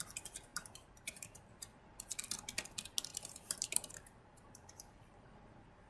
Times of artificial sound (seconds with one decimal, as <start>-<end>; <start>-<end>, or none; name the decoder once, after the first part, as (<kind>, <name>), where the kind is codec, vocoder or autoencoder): 0.5-1.5 (vocoder, BigVGAN v2); 3.1-5.3